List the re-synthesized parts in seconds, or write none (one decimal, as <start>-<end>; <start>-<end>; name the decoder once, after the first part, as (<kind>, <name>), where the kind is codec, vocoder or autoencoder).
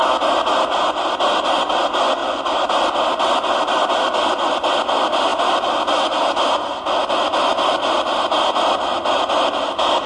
none